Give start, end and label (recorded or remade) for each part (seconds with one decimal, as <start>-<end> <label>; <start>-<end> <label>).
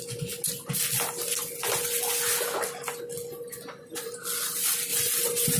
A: 0.0-5.6 recorded